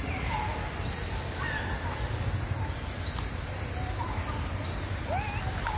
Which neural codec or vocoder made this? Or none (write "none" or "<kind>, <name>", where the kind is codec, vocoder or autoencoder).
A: none